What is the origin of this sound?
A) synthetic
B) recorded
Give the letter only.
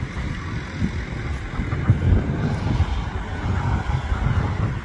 B